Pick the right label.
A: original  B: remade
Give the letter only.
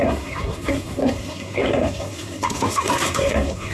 B